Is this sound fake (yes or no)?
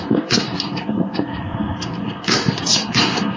yes